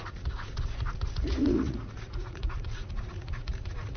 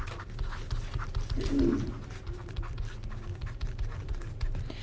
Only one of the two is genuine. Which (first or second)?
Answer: second